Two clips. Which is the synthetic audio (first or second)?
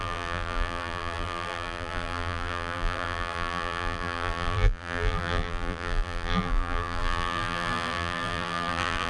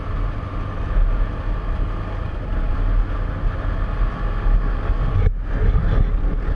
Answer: first